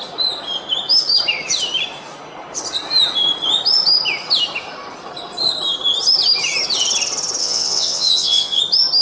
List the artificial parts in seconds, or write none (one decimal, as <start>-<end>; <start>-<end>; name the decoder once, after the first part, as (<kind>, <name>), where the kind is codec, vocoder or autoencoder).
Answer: 7.4-8.6 (vocoder, WaveNeXt)